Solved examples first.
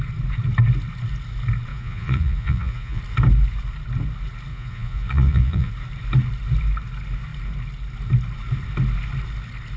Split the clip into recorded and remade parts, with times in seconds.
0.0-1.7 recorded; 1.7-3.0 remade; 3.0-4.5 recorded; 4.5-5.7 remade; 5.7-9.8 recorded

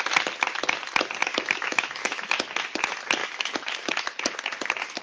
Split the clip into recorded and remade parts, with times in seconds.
0.0-1.3 recorded; 1.3-2.5 remade; 2.5-3.2 recorded; 3.2-3.7 remade; 3.7-5.0 recorded

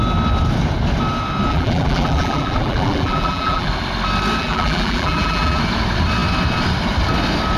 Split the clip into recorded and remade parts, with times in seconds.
0.0-1.5 recorded; 1.5-3.7 remade; 3.7-4.4 recorded; 4.4-5.6 remade; 5.6-7.6 recorded

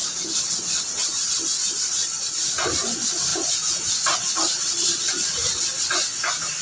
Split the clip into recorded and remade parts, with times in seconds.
0.0-3.3 recorded; 3.3-4.3 remade; 4.3-6.6 recorded

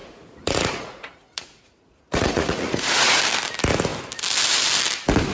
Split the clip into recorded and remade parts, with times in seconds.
0.0-3.2 remade; 3.2-5.3 recorded